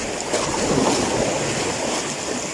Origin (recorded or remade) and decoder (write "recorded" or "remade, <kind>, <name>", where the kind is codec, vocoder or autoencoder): recorded